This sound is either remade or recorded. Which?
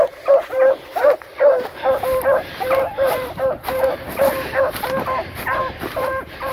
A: remade